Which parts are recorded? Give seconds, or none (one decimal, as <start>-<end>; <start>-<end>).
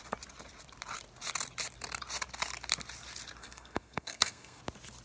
0.0-3.4; 4.6-5.0